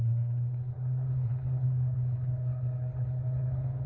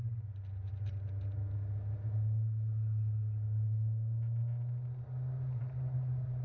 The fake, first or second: first